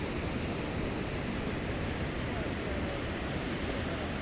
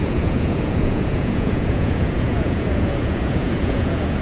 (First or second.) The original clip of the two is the first